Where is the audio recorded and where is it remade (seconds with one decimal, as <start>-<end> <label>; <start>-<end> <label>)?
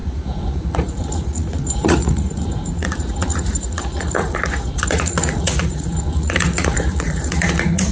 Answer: 0.0-7.9 remade